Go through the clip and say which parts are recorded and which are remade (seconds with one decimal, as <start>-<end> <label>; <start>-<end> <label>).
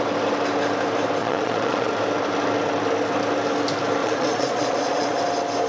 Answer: 0.0-1.2 recorded; 1.2-1.9 remade; 1.9-4.0 recorded; 4.0-5.2 remade; 5.2-5.7 recorded